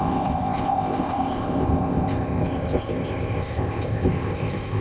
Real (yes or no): no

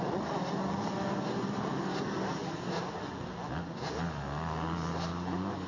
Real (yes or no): yes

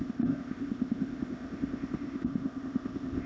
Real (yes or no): no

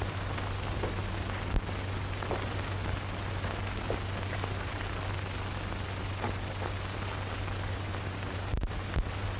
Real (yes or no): yes